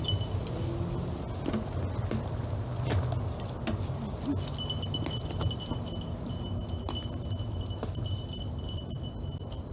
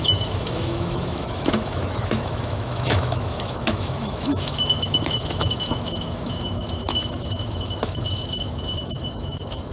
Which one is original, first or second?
first